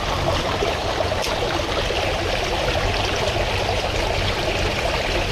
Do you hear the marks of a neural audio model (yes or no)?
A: no